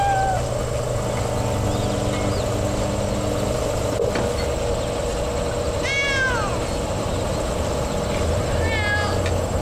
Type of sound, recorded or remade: recorded